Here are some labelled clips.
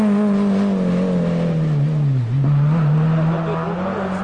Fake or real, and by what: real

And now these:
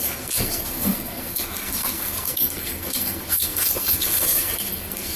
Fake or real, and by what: fake, codec, SNAC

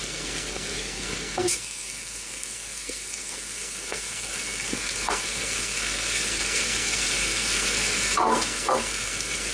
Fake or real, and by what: fake, codec, SNAC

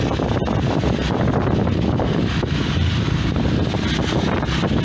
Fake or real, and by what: real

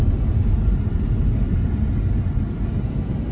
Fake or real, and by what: real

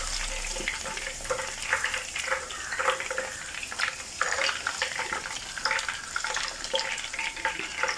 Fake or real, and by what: real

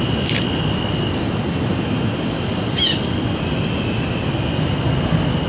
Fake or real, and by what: real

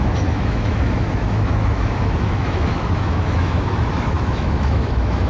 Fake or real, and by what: fake, autoencoder, DAC-VAE